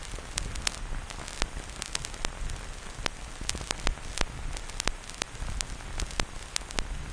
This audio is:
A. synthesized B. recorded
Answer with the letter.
B